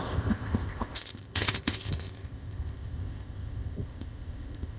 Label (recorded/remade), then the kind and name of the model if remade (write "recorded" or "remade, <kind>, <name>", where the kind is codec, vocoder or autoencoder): remade, codec, ZipCodec